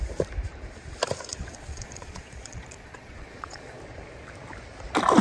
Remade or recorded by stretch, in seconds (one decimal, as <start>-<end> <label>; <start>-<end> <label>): 0.0-1.3 recorded; 1.3-3.8 remade; 3.8-5.2 recorded